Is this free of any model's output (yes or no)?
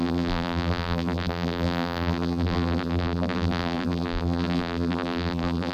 no